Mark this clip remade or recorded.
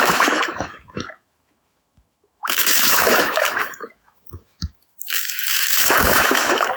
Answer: remade